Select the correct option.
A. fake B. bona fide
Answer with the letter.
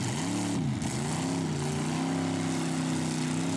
B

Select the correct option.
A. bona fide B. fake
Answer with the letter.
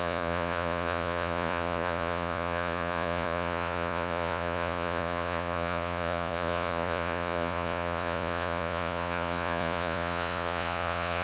B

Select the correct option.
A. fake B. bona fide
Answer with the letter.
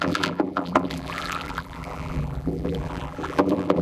A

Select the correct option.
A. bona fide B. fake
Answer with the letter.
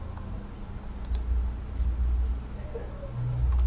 A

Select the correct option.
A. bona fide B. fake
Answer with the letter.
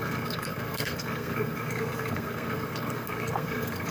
B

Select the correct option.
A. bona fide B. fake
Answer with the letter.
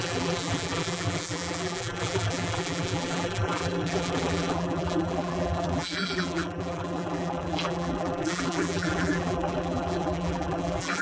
B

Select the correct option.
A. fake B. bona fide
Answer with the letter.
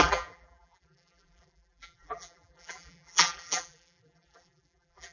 A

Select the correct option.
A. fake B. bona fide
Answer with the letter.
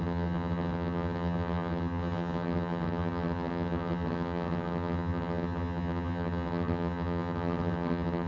A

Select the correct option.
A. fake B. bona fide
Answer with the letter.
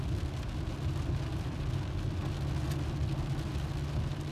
B